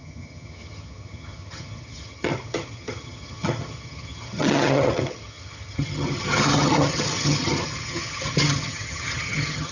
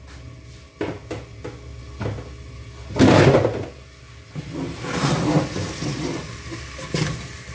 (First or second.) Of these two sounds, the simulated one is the first